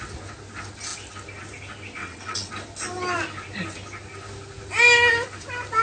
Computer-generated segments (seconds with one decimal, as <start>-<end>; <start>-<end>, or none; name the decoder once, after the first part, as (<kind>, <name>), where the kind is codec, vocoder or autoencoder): 2.0-2.5 (vocoder, WaveNeXt)